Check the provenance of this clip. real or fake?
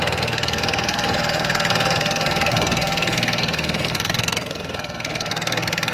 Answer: fake